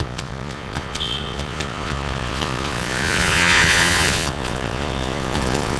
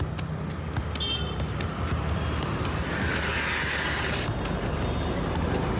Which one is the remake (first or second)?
first